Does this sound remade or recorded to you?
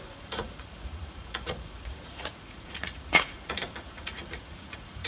remade